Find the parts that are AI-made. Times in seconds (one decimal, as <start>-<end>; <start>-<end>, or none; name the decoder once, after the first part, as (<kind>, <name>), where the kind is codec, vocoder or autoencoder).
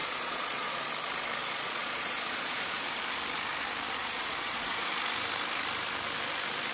0.0-0.9 (vocoder, Vocos); 1.4-2.8; 4.0-4.9